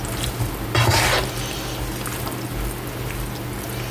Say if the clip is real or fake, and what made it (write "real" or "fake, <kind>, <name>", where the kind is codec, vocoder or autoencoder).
real